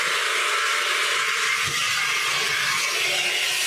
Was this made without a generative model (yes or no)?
yes